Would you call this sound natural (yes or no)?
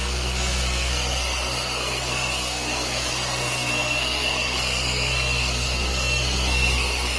no